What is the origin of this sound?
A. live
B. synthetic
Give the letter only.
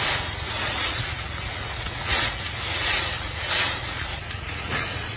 B